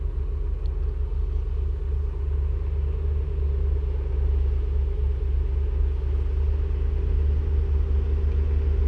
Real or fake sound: real